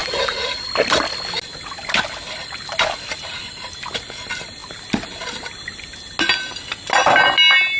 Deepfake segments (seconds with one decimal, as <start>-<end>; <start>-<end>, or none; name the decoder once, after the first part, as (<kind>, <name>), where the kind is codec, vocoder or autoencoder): 0.0-0.7 (vocoder, Vocos)